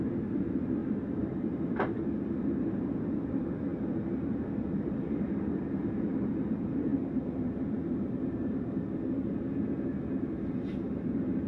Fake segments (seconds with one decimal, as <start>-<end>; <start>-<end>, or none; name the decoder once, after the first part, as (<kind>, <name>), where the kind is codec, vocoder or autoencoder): 0.0-11.5 (vocoder, BigVGAN v2)